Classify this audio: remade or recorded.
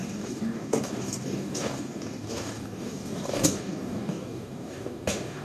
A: remade